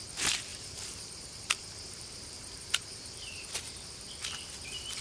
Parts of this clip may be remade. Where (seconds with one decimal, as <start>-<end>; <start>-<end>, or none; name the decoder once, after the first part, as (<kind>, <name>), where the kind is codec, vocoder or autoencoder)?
0.5-3.5 (vocoder, BigVGAN v2)